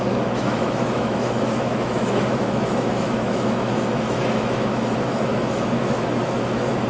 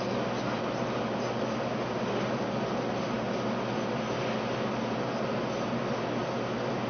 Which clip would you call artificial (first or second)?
first